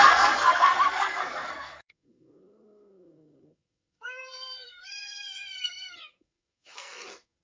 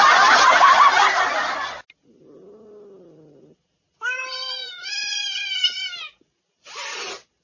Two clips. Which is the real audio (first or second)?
second